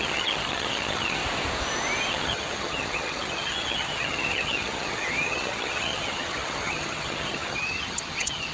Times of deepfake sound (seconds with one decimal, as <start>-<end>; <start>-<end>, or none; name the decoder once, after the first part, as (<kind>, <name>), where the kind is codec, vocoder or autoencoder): 0.0-1.2 (vocoder, HiFi-GAN); 2.1-8.5